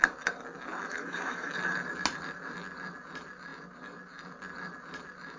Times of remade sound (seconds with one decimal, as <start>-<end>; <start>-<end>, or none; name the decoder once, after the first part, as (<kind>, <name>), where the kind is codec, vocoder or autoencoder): 0.8-1.5 (autoencoder, DAC-VAE)